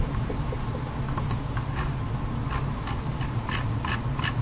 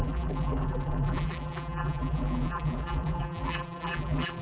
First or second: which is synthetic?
second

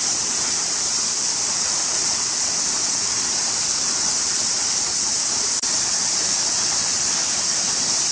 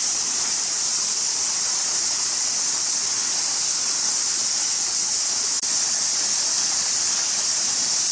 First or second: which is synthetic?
first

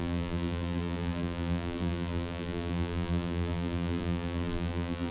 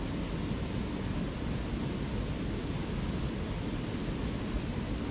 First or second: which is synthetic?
first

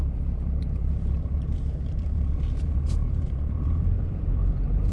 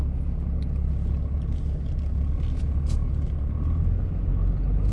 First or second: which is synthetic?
first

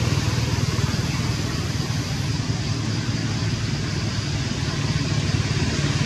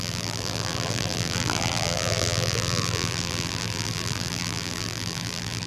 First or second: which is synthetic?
second